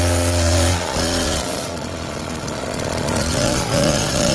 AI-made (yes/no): yes